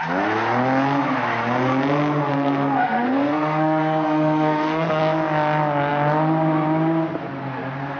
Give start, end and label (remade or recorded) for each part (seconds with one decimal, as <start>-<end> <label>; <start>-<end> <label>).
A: 0.0-2.3 recorded; 2.3-5.0 remade; 5.0-8.0 recorded